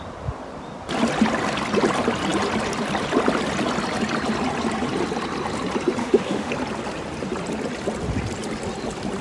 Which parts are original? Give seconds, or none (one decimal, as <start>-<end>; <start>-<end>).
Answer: 0.0-6.0; 6.5-9.2